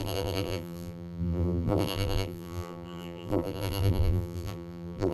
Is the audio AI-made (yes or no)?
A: yes